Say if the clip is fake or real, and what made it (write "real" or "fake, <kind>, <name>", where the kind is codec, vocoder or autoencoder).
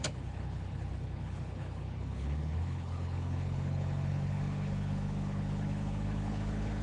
fake, codec, HILCodec